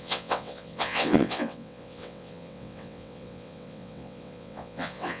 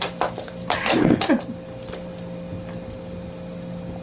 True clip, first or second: second